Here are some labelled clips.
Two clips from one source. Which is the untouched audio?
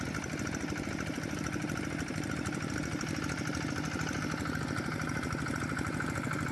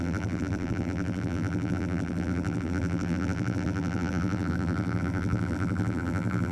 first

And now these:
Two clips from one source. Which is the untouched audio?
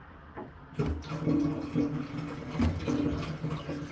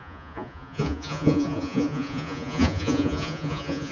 first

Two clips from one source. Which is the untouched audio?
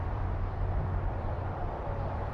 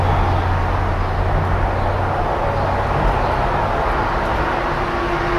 second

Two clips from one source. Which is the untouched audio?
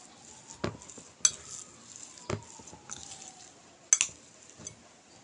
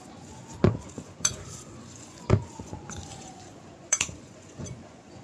first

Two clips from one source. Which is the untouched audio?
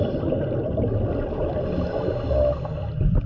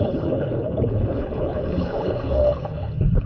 first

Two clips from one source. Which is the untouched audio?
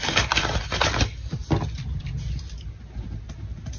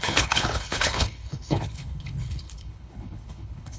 first